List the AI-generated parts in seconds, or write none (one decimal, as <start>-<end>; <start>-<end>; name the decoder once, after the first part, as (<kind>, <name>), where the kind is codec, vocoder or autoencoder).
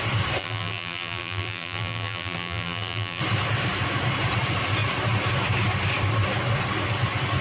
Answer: 0.4-3.2 (vocoder, BigVGAN v2)